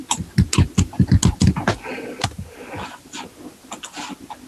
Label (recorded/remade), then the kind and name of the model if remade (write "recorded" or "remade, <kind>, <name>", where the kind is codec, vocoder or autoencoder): recorded